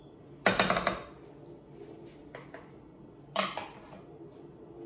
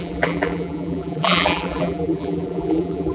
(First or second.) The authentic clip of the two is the first